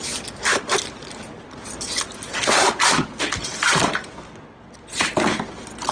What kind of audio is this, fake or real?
real